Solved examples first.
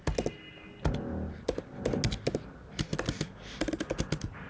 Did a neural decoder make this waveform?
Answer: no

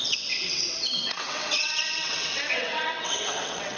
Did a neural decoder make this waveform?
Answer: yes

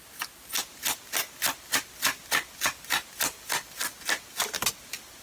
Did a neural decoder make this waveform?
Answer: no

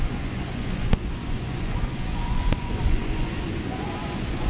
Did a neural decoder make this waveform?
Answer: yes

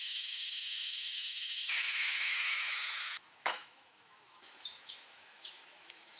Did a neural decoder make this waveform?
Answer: yes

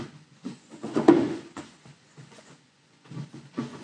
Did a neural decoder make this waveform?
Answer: yes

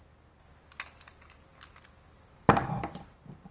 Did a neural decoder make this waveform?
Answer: no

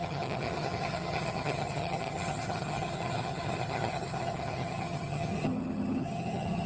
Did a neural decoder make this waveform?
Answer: yes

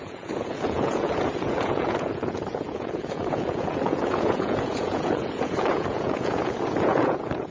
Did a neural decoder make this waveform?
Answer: yes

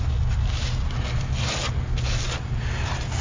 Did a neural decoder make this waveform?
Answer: no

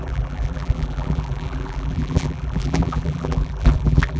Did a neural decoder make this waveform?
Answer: yes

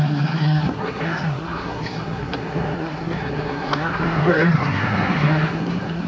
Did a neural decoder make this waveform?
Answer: yes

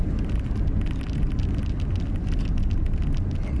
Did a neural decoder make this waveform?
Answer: no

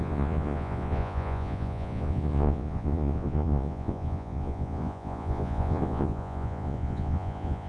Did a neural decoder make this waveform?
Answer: yes